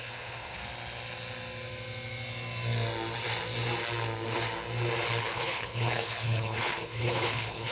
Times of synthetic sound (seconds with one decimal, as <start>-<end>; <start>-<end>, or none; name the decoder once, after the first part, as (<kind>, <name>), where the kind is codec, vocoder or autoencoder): 0.0-0.6 (codec, HILCodec); 5.2-7.7